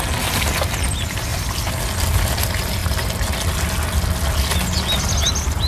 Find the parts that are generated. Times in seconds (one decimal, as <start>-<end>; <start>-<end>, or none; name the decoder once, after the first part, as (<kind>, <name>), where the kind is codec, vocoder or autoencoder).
none